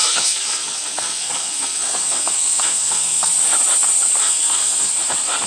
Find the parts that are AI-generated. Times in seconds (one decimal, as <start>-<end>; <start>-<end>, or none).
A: 0.0-3.3; 4.2-4.9